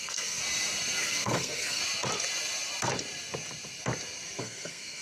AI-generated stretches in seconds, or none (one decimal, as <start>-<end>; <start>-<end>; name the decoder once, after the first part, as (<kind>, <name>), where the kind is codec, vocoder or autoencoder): 0.0-0.4 (codec, SNAC); 1.0-1.8; 4.4-5.0

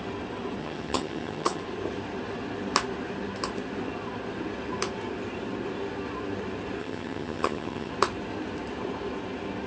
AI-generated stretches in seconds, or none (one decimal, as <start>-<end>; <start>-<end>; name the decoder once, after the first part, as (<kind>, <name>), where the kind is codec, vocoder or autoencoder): 0.6-1.6 (vocoder, HiFi-GAN); 6.8-7.9

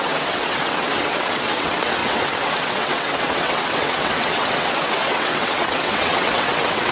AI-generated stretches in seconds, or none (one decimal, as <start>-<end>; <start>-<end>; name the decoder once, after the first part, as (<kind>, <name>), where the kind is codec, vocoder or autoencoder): 0.0-6.9 (vocoder, WaveNeXt)

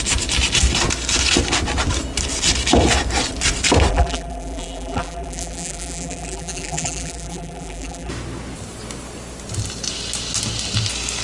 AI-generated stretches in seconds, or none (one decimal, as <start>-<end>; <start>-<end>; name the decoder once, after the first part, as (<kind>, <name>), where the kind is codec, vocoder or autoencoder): 3.9-8.1 (vocoder, BigVGAN v2)

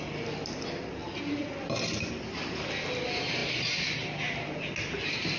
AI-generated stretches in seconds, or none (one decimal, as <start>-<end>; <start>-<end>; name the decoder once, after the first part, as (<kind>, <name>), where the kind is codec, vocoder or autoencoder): none

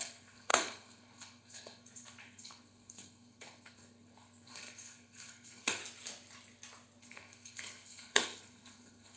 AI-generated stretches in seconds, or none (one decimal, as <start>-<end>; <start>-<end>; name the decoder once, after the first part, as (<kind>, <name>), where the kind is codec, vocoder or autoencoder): 0.0-5.8 (codec, SNAC); 7.0-9.2

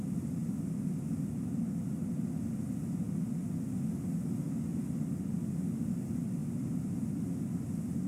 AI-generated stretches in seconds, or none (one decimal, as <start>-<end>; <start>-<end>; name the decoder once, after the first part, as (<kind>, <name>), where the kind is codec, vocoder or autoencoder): 6.4-8.1 (vocoder, BigVGAN v2)